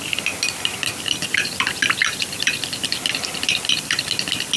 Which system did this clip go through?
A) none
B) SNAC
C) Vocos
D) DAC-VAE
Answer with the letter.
A